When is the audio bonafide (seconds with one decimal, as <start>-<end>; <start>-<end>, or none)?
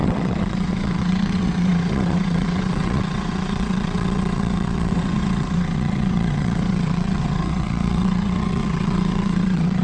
none